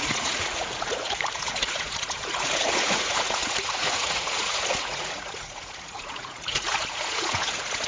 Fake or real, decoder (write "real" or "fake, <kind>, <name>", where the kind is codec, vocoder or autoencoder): fake, vocoder, Vocos